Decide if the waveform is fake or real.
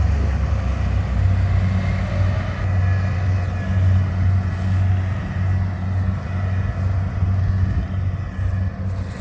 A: real